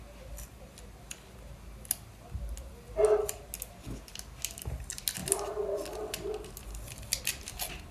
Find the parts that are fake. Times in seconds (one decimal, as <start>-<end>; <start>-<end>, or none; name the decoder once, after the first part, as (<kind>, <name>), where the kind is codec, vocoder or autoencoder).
none